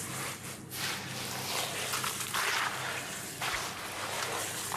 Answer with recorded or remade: recorded